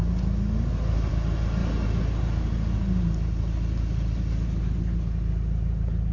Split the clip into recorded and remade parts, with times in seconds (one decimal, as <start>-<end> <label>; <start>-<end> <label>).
0.0-6.1 recorded

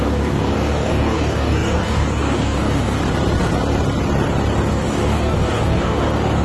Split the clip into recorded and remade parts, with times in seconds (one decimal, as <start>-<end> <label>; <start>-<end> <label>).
0.0-3.0 remade; 3.0-4.7 recorded; 4.7-6.4 remade